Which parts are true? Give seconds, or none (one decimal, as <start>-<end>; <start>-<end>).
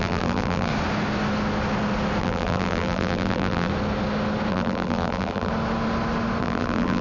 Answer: 0.7-2.2; 3.7-4.5; 5.5-6.4